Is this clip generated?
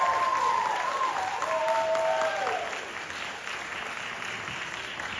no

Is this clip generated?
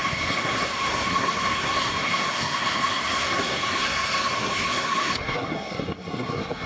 yes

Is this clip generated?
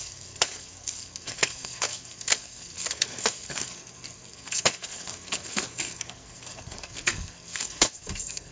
yes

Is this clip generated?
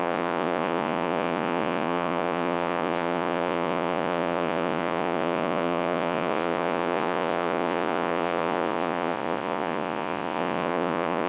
yes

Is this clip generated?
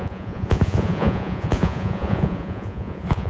yes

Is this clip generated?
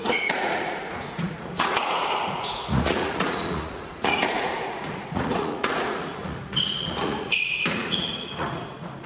yes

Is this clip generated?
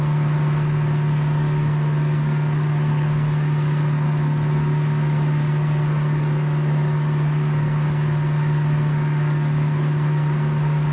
yes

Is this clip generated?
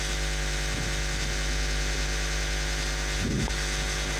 no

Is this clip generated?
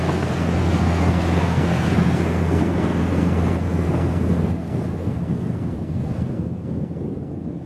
yes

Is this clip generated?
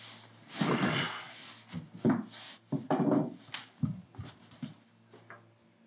no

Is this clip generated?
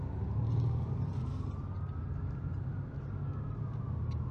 no